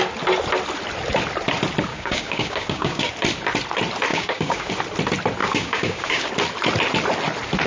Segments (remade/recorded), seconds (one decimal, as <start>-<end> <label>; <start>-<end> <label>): 0.0-1.9 recorded; 1.9-3.1 remade; 3.1-4.1 recorded; 4.1-4.7 remade; 4.7-5.4 recorded; 5.4-6.3 remade; 6.3-7.7 recorded